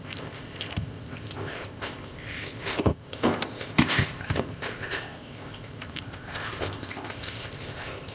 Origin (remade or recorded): remade